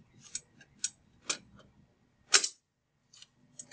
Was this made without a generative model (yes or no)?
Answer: yes